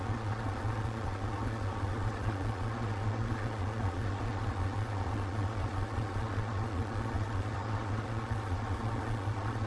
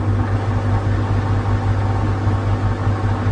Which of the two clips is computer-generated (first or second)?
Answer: first